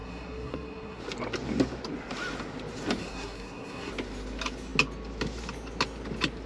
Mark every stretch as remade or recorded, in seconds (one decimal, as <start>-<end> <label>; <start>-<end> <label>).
0.0-1.0 remade; 1.0-3.0 recorded; 3.0-3.9 remade; 3.9-6.5 recorded